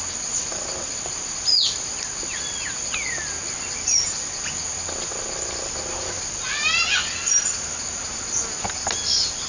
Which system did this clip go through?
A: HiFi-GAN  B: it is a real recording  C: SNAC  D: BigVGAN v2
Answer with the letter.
B